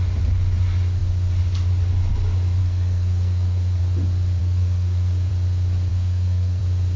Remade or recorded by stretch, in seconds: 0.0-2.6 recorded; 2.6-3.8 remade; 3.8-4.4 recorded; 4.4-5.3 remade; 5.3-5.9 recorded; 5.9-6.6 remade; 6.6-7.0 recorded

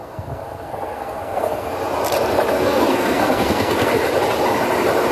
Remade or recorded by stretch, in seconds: 0.0-1.7 remade; 1.7-2.5 recorded; 2.5-3.9 remade; 3.9-5.1 recorded

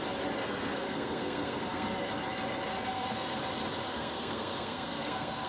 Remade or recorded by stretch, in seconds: 0.0-0.4 recorded; 0.4-2.1 remade; 2.1-2.7 recorded; 2.7-3.4 remade; 3.4-3.9 recorded; 3.9-5.5 remade

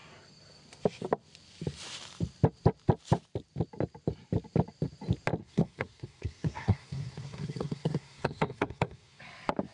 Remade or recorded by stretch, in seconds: 0.0-5.4 recorded; 5.4-9.2 remade; 9.2-9.7 recorded